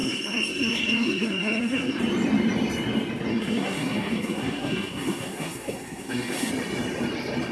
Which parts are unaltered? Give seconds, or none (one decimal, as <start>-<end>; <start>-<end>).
2.0-3.3; 6.5-7.5